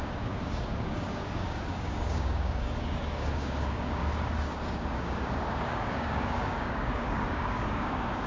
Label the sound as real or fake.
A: fake